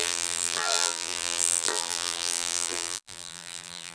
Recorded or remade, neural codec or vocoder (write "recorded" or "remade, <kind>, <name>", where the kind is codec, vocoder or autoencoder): remade, vocoder, BigVGAN v2